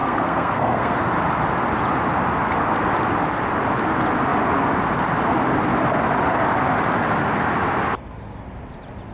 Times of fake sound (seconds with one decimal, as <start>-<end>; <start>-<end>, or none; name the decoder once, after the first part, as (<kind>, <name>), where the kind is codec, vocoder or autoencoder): 0.0-1.1 (codec, SNAC)